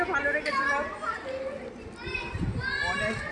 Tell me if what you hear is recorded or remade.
recorded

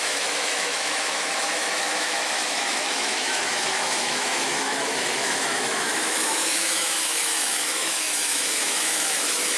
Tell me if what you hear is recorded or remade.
remade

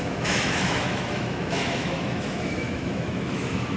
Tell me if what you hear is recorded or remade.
remade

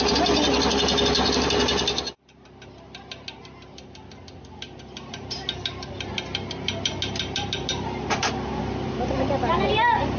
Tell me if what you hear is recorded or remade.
recorded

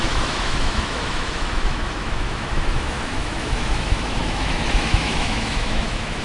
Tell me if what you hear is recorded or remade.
remade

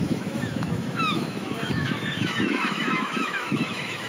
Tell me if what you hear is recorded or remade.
remade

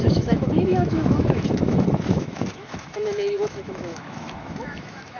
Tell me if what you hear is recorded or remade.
remade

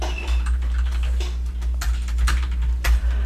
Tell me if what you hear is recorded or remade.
recorded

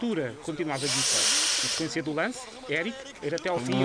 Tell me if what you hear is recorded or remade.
recorded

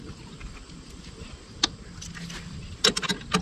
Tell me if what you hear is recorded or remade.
recorded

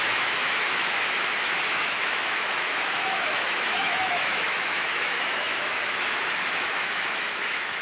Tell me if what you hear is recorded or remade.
remade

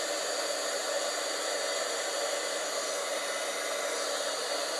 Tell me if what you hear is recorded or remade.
recorded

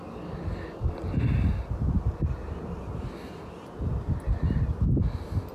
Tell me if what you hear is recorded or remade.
recorded